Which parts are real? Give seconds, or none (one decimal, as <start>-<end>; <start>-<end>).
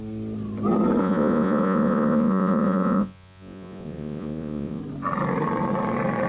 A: 0.0-1.0; 4.8-6.3